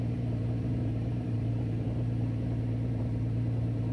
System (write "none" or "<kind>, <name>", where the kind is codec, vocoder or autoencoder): vocoder, BigVGAN v2